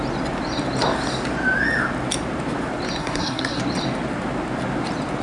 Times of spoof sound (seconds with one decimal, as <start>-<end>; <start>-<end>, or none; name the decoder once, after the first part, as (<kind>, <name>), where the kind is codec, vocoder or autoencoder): 3.0-3.6 (codec, SNAC)